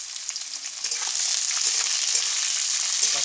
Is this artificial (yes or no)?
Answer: no